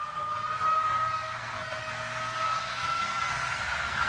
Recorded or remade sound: remade